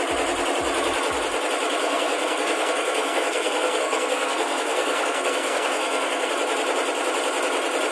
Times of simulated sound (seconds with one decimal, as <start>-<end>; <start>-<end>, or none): 1.8-6.3